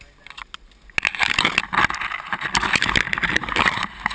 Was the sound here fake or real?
real